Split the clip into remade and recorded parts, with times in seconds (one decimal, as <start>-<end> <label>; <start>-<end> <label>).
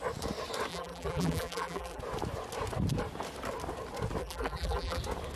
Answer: 0.0-0.7 recorded; 0.7-2.0 remade; 2.0-4.2 recorded; 4.2-5.0 remade; 5.0-5.4 recorded